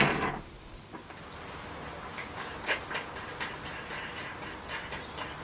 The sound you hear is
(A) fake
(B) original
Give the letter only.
B